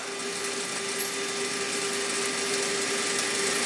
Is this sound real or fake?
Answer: real